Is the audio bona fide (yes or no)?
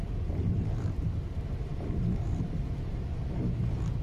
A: no